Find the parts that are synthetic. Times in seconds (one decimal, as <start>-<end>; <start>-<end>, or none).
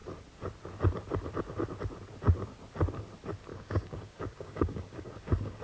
3.5-5.6